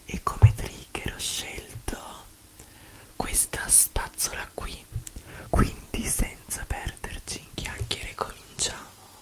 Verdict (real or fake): real